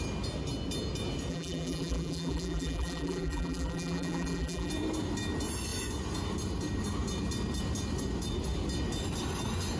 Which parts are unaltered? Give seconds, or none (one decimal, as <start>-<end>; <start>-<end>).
0.0-1.3; 4.7-9.8